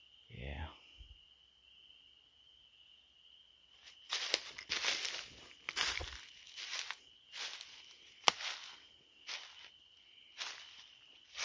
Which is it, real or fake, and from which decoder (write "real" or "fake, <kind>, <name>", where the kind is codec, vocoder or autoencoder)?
real